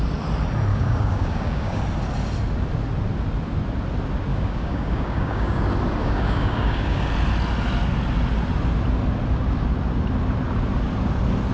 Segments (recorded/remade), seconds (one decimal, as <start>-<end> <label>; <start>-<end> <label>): 0.0-0.7 recorded; 0.7-1.8 remade; 1.8-4.3 recorded; 4.3-5.6 remade; 5.6-6.0 recorded; 6.0-7.1 remade; 7.1-11.5 recorded